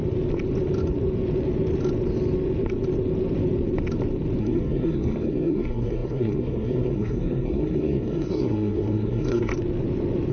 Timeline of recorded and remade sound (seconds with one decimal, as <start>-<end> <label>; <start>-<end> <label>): 0.0-4.4 recorded; 4.4-9.5 remade; 9.5-10.3 recorded